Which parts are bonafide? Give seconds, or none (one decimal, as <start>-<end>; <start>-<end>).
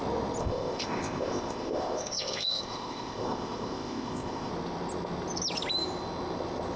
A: 0.0-0.4; 4.5-6.8